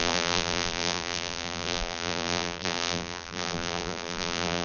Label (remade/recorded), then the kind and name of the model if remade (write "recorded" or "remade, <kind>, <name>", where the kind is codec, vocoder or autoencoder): remade, vocoder, BigVGAN v2